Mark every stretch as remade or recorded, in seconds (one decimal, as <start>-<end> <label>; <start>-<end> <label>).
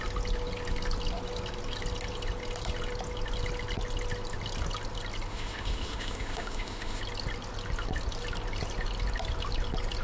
0.0-5.3 recorded; 5.3-7.0 remade; 7.0-10.0 recorded